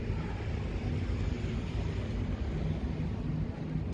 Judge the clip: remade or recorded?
recorded